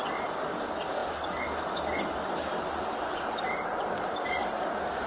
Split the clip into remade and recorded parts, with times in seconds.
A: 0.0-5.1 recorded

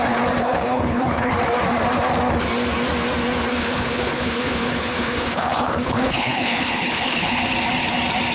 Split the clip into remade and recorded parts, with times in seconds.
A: 0.0-0.4 recorded; 0.4-1.3 remade; 1.3-3.5 recorded; 3.5-7.4 remade; 7.4-8.3 recorded